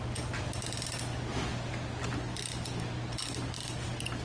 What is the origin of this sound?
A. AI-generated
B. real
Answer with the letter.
B